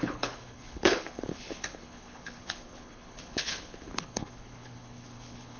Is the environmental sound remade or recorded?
remade